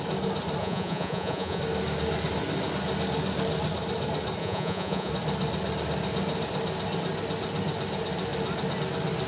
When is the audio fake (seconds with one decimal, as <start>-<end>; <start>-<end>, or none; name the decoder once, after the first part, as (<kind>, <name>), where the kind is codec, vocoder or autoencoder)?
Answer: 0.6-1.6 (vocoder, Vocos); 4.4-5.1